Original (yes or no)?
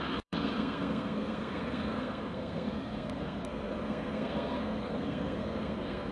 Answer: no